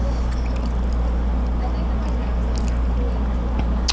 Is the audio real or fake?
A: real